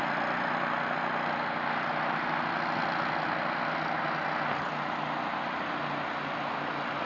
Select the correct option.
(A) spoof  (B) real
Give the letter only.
B